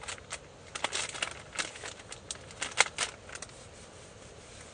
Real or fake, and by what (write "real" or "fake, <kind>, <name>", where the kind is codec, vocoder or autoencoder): real